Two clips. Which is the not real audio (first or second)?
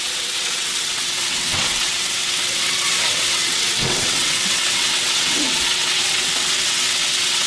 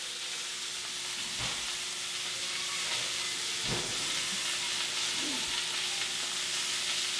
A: first